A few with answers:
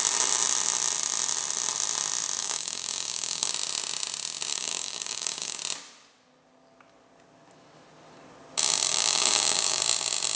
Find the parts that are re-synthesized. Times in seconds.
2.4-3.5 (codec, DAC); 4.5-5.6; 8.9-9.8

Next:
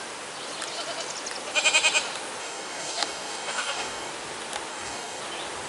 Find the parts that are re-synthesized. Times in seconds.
2.4-4.1 (codec, DAC); 4.7-5.2

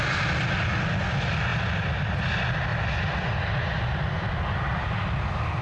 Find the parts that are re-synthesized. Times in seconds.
none

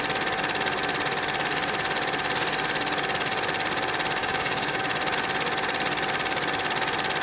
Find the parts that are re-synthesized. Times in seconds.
4.2-4.8 (codec, DAC)